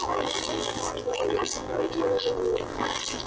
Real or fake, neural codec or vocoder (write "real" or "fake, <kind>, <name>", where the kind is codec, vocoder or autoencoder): fake, vocoder, BigVGAN v2